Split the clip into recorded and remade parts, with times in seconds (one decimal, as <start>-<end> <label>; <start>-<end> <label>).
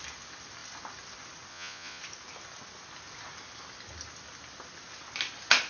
0.0-1.5 recorded; 1.5-2.0 remade; 2.0-5.7 recorded